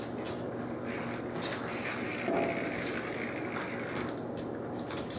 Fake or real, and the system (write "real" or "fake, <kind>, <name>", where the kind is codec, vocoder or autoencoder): real